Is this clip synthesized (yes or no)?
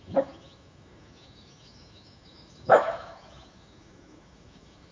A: yes